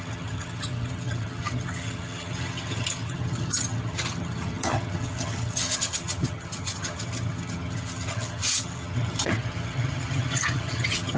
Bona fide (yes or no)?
no